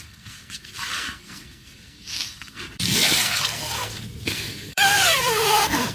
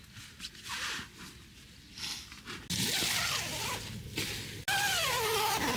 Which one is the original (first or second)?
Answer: second